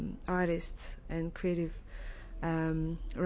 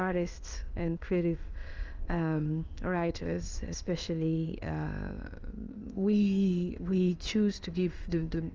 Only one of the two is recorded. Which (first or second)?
first